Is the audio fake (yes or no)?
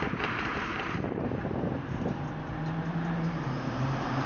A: yes